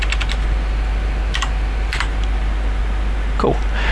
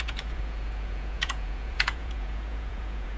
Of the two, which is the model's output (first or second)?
second